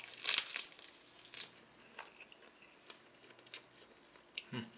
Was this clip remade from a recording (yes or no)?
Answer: no